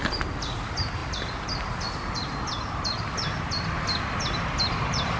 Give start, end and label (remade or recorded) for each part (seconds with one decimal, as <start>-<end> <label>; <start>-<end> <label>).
0.0-1.0 recorded; 1.0-3.4 remade; 3.4-5.2 recorded